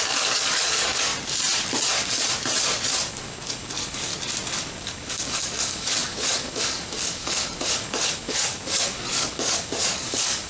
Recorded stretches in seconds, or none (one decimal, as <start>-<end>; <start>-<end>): 1.1-3.1; 4.1-4.6